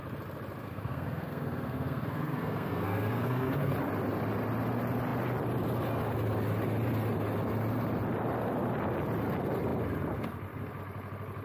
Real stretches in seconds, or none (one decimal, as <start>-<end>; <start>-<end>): 0.0-0.6; 3.7-11.4